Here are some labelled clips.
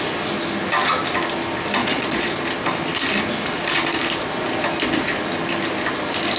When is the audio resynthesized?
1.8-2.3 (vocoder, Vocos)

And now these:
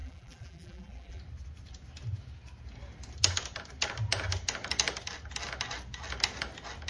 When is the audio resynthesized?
0.0-1.2 (vocoder, BigVGAN v2)